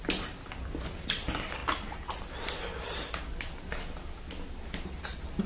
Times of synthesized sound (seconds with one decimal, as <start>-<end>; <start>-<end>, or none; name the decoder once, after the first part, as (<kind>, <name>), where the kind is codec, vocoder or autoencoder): none